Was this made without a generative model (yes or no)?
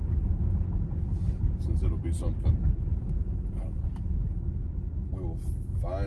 yes